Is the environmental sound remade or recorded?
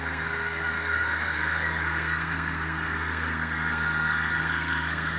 remade